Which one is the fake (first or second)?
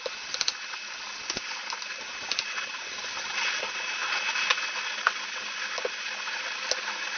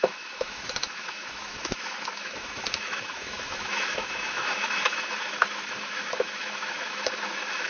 second